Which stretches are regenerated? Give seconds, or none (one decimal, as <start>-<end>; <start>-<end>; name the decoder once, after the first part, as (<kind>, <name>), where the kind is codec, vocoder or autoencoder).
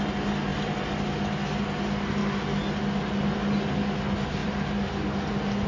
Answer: 4.4-5.3 (vocoder, BigVGAN v2)